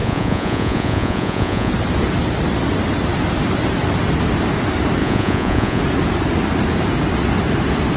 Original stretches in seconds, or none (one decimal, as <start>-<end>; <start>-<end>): 1.7-5.0; 5.8-8.0